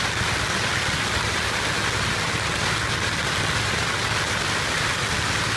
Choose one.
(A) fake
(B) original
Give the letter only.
B